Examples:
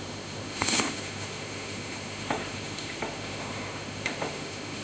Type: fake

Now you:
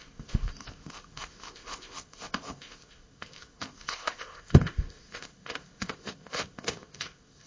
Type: fake